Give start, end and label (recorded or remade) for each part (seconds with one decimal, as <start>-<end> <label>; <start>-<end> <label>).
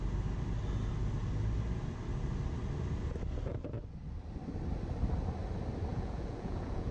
0.0-5.9 recorded; 5.9-6.9 remade